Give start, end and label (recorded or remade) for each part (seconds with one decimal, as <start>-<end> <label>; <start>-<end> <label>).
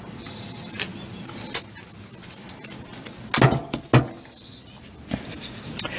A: 0.0-6.0 recorded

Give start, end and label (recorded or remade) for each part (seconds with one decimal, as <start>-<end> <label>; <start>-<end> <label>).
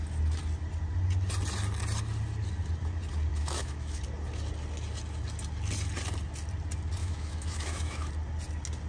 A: 0.0-3.3 recorded; 3.3-4.0 remade; 4.0-7.0 recorded; 7.0-8.1 remade; 8.1-8.9 recorded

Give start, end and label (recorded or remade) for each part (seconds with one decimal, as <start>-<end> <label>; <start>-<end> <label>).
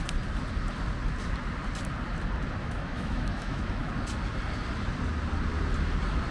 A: 0.0-2.6 recorded; 2.6-3.9 remade; 3.9-6.3 recorded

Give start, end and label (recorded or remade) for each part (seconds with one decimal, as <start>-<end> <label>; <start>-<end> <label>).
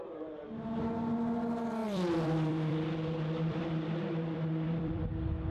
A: 0.0-1.8 recorded; 1.8-5.1 remade; 5.1-5.5 recorded